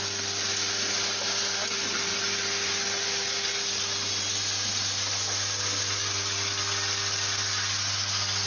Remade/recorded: recorded